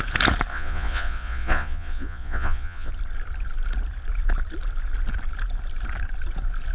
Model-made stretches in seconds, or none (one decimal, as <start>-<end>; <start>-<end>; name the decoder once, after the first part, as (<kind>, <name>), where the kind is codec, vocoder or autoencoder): 0.5-2.9 (vocoder, Vocos)